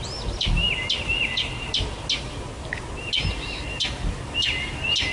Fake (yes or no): no